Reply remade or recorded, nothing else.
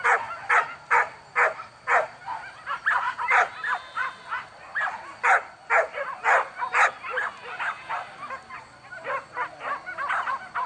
recorded